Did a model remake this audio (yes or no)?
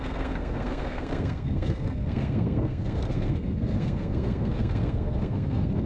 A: yes